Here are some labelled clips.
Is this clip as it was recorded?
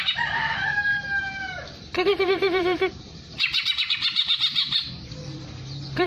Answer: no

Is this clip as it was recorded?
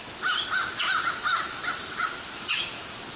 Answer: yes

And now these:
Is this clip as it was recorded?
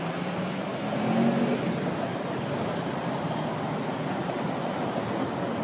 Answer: yes